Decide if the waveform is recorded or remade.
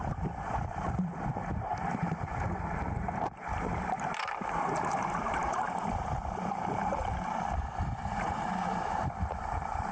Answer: remade